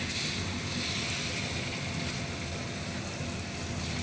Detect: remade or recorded recorded